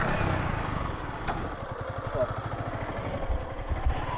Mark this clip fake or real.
real